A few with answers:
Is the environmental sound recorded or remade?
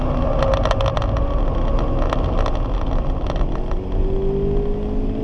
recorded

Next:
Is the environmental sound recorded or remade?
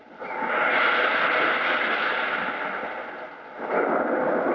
recorded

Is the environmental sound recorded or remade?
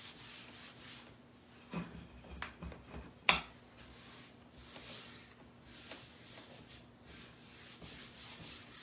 recorded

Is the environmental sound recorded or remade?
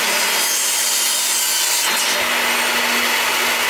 recorded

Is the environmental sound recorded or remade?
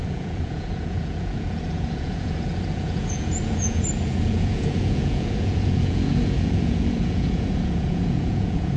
remade